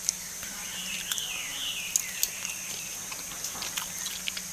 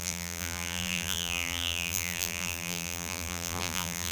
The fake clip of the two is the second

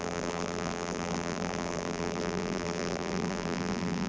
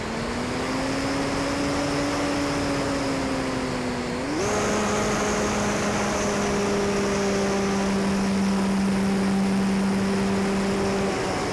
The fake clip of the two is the first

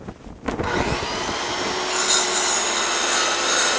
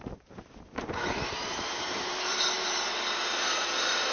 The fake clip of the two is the second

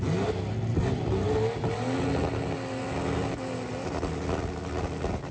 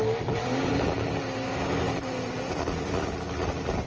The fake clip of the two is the second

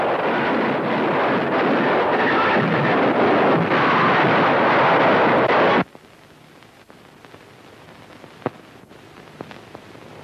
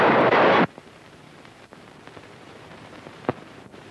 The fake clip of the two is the second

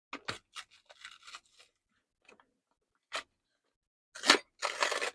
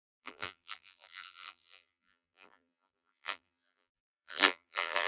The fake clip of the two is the second